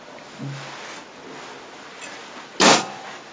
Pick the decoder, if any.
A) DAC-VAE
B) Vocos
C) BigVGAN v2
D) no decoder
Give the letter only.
D